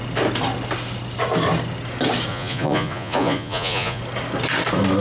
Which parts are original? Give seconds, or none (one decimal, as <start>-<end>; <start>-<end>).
0.0-2.3; 4.0-5.0